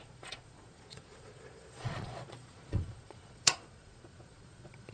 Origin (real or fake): fake